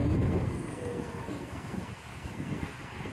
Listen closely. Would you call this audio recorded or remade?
remade